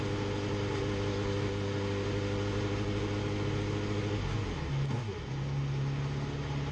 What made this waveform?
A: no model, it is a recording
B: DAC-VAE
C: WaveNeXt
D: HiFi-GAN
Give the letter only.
A